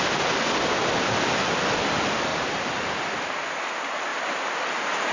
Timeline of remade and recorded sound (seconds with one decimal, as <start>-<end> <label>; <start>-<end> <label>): 0.0-2.3 recorded; 2.3-2.9 remade; 2.9-4.1 recorded; 4.1-5.1 remade